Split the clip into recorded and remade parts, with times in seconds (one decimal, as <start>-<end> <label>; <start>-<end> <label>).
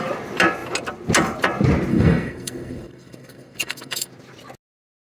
0.0-1.9 recorded; 1.9-4.1 remade; 4.1-5.1 recorded